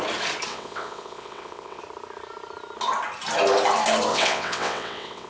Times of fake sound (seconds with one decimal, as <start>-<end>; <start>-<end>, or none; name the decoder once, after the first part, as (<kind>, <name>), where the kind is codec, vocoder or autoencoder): 0.5-1.8 (vocoder, WaveNeXt); 4.1-5.3